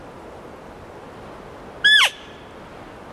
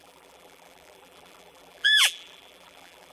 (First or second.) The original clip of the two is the first